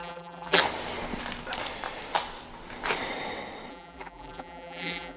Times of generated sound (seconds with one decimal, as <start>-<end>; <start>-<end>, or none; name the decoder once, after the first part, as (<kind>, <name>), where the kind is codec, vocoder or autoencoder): 0.0-0.6 (vocoder, BigVGAN v2); 3.7-5.2